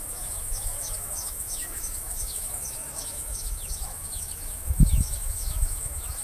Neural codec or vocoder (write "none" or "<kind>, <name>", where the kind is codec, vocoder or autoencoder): autoencoder, DAC-VAE